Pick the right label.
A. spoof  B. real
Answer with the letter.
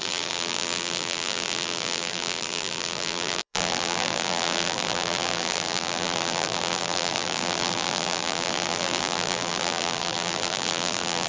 A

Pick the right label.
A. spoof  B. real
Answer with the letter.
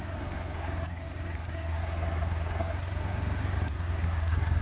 A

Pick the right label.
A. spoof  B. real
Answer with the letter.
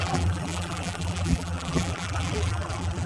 A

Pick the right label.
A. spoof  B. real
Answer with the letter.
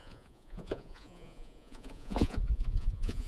A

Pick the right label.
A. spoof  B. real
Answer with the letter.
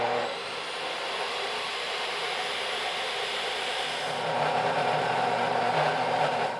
A